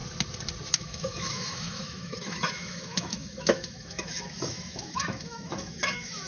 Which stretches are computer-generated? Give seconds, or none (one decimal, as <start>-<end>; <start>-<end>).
0.8-6.3